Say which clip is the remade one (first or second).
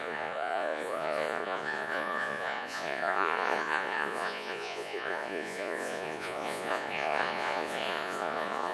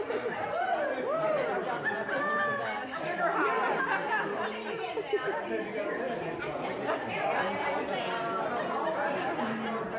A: first